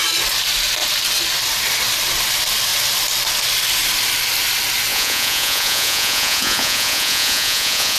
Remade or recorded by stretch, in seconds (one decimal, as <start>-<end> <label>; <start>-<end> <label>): 0.0-4.9 recorded; 4.9-8.0 remade